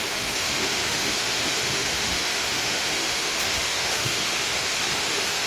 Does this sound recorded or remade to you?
remade